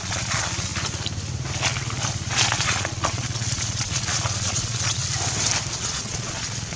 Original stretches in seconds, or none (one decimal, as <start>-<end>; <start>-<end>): 0.7-2.3; 5.0-5.8

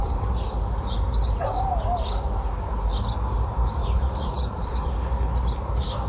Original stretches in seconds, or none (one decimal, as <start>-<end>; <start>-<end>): 2.0-3.8; 5.1-6.1

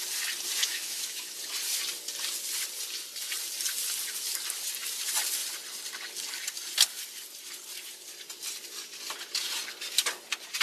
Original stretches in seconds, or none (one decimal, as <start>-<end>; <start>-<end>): 0.0-0.6; 1.4-10.6

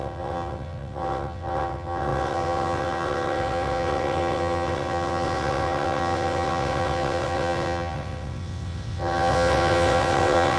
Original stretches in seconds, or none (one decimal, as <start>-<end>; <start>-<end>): none

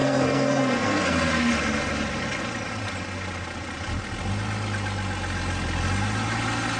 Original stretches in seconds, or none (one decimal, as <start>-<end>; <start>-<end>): 1.5-6.8

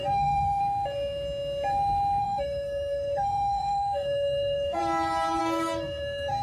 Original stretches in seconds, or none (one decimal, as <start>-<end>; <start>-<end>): 0.6-2.2; 4.8-5.4